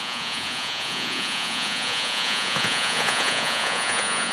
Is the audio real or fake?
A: fake